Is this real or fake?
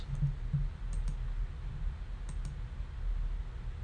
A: real